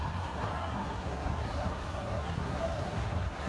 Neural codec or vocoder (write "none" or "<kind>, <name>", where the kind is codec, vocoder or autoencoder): codec, SNAC